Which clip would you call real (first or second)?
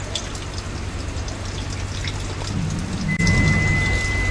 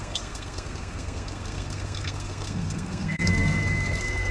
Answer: first